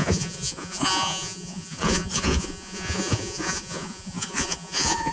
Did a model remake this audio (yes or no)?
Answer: yes